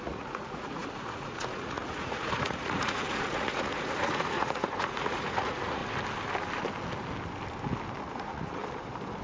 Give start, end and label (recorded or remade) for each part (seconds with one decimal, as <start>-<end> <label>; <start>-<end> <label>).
0.0-5.8 remade; 5.8-8.0 recorded; 8.0-8.6 remade; 8.6-9.2 recorded